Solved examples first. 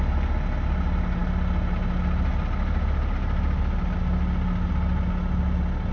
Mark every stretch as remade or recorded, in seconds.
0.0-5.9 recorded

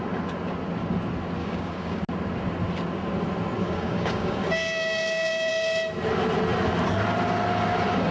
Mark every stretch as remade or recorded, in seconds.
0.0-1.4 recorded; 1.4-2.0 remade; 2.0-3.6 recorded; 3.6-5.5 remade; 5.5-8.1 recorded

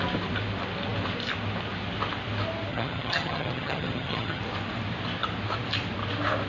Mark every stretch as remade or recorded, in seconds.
0.0-2.7 recorded; 2.7-4.4 remade; 4.4-6.5 recorded